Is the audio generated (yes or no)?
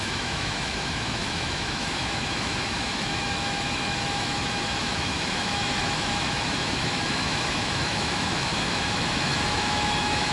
yes